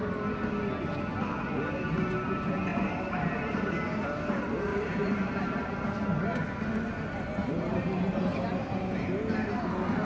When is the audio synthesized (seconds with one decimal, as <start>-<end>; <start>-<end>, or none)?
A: 2.7-3.8; 4.7-5.7; 7.4-8.2